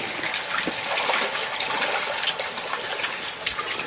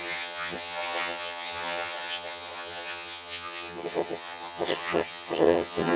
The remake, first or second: second